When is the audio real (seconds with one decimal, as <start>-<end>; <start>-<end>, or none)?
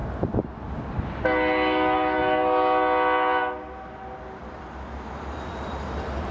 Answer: 0.0-6.3